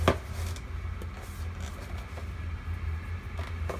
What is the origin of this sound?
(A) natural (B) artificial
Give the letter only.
A